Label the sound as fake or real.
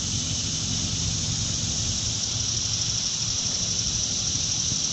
real